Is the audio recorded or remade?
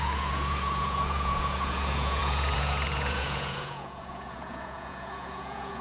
remade